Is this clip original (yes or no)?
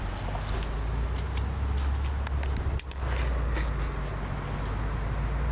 yes